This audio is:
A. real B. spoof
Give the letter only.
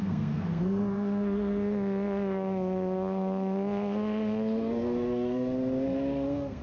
B